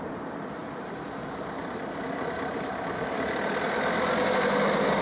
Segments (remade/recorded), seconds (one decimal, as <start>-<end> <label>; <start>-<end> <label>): 0.0-0.6 recorded; 0.6-3.6 remade; 3.6-5.0 recorded